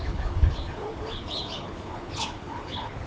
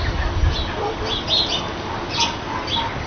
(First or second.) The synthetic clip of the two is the first